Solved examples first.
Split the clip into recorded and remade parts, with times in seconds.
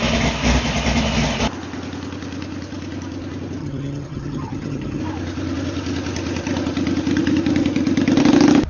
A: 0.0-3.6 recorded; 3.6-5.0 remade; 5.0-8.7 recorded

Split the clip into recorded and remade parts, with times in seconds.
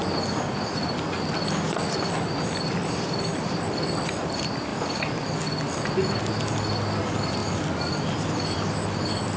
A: 0.0-9.4 recorded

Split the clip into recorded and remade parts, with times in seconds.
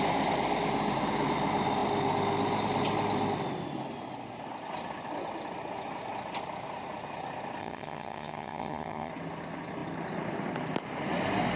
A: 0.0-7.6 recorded; 7.6-9.1 remade; 9.1-11.6 recorded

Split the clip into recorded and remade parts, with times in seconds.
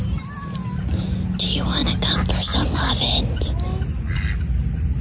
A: 0.0-5.0 recorded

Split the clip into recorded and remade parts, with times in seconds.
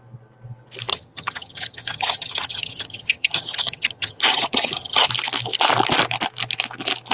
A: 0.0-0.9 recorded; 0.9-5.1 remade; 5.1-7.1 recorded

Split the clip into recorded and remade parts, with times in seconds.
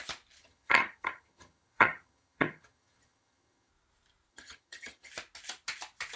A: 0.0-0.4 recorded; 0.4-3.7 remade; 3.7-4.3 recorded; 4.3-5.1 remade; 5.1-6.2 recorded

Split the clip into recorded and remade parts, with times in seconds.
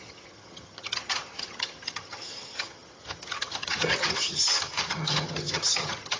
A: 0.0-6.2 remade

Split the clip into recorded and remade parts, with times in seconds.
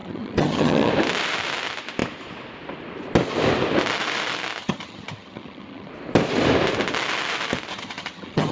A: 0.0-0.9 remade; 0.9-4.6 recorded; 4.6-5.9 remade; 5.9-7.7 recorded; 7.7-8.5 remade